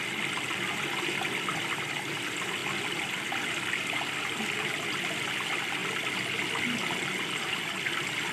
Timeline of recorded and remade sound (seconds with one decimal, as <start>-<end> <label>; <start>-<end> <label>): 0.0-8.3 recorded